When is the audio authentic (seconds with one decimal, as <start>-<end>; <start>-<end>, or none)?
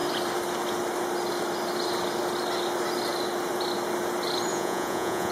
0.0-4.5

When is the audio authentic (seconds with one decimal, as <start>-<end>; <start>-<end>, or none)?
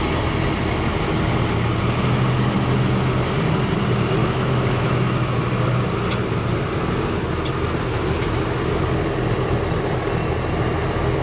0.0-4.2; 5.4-11.2